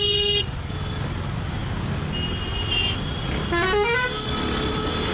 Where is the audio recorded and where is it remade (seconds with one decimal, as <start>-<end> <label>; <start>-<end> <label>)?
0.0-5.1 recorded